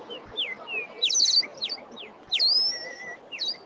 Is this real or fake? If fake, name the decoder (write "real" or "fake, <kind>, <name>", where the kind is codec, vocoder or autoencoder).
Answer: real